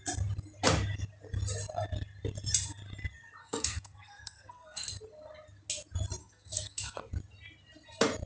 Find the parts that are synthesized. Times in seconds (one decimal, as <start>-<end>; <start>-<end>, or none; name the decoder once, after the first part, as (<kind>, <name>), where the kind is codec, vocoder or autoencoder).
3.4-4.9 (codec, SNAC); 6.2-7.1